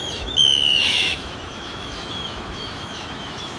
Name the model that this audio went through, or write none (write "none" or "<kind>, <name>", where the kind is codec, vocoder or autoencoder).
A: autoencoder, DAC-VAE